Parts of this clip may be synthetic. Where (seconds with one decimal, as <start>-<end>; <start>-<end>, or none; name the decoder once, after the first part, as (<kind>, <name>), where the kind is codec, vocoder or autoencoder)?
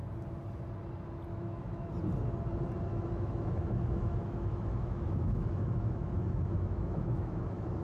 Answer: 1.3-1.9 (autoencoder, DAC-VAE); 2.9-7.8